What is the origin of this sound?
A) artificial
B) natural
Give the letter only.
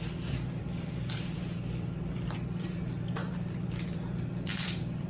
A